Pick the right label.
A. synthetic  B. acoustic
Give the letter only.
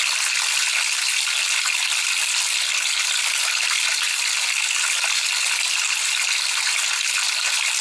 B